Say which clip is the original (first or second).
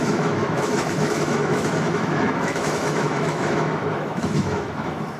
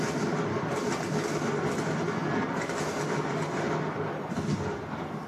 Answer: second